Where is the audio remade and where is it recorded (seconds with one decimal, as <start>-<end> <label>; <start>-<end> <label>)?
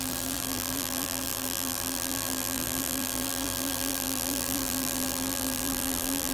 0.0-6.3 remade